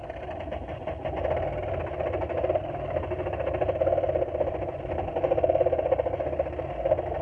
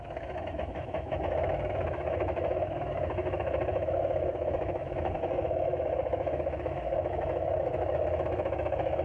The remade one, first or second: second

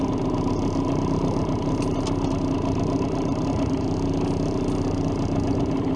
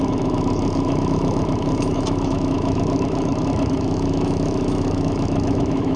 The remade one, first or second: second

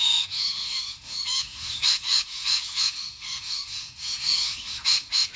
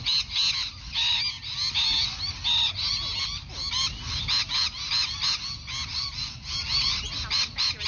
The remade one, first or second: first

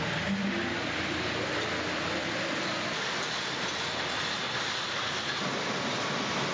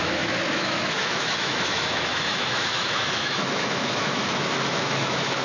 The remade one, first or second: second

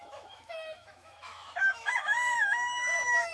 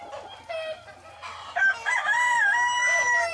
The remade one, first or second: first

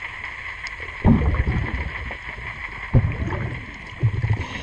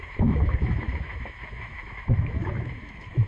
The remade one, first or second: second